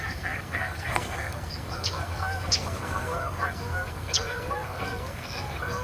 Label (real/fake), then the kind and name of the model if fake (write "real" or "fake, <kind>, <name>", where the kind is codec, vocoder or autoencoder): fake, codec, SNAC